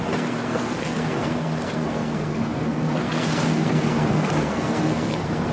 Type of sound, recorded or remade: remade